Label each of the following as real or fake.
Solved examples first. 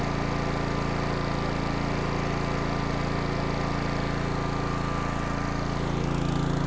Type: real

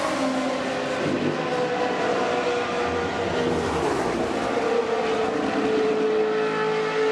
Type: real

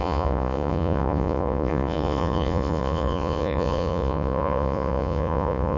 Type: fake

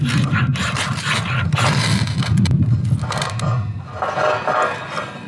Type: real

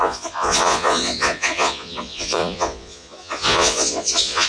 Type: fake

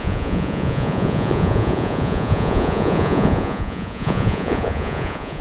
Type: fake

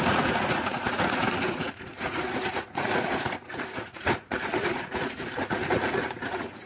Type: fake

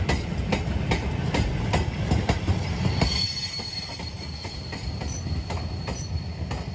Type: real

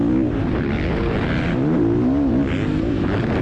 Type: real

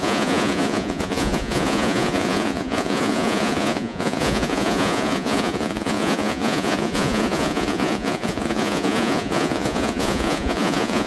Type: fake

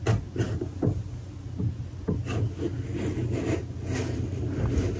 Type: real